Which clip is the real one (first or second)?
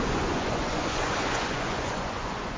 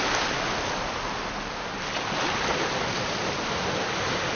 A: second